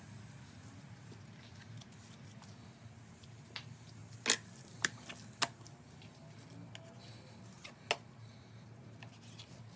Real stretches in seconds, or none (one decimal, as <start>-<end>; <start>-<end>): 0.0-9.8